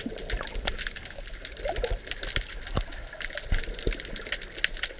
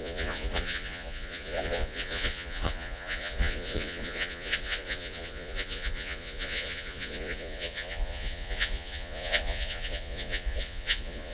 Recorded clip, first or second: first